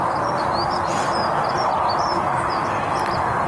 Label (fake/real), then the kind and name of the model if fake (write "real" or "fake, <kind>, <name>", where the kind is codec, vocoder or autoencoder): real